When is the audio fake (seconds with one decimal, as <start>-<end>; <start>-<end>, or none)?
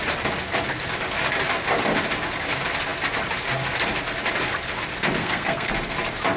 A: 5.2-5.7